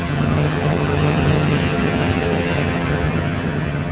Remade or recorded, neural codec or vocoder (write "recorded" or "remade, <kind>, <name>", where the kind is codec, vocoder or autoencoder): remade, vocoder, HiFi-GAN